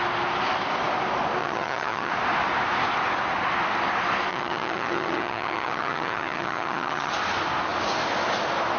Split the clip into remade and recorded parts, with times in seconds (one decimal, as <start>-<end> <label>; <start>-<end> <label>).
0.0-1.4 recorded; 1.4-2.1 remade; 2.1-4.3 recorded; 4.3-7.1 remade; 7.1-8.8 recorded